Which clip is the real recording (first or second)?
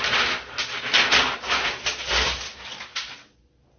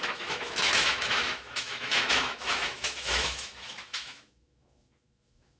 first